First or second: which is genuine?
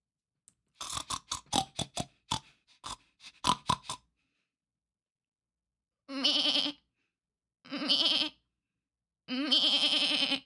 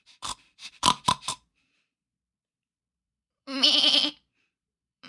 first